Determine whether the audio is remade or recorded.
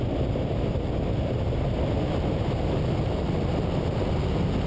recorded